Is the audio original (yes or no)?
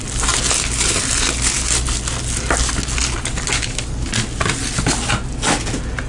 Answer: yes